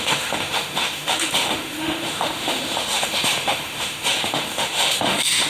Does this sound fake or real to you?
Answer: fake